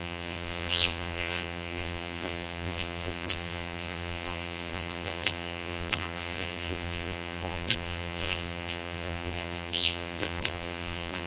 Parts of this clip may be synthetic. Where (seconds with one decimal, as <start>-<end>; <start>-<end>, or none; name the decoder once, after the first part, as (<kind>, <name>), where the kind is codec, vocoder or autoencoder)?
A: 0.0-11.3 (vocoder, BigVGAN v2)